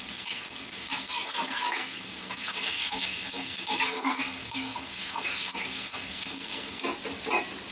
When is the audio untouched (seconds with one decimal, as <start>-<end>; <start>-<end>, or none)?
6.9-7.7